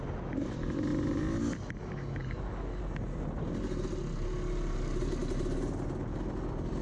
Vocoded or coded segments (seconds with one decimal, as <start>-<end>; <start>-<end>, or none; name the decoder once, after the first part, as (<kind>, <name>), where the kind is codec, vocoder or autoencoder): 2.2-2.8 (codec, DAC)